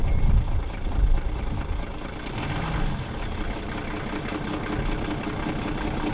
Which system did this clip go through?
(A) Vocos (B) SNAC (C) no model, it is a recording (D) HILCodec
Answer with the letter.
C